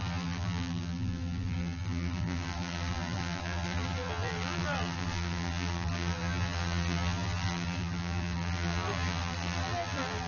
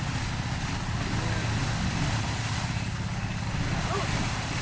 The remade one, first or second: first